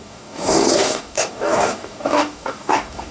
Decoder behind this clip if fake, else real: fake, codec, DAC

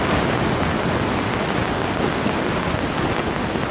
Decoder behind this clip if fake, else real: real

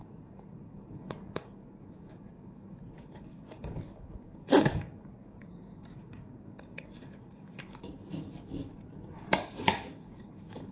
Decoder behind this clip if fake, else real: fake, codec, DAC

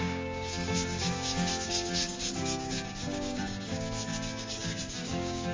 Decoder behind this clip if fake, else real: fake, codec, DAC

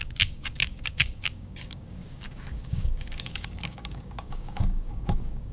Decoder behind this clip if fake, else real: fake, codec, DAC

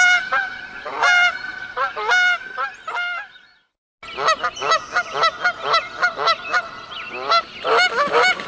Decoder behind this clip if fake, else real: real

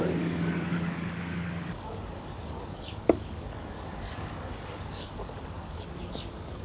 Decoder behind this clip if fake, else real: fake, codec, DAC